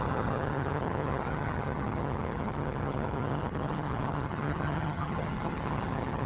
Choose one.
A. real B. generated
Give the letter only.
B